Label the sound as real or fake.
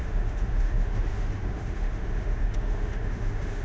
fake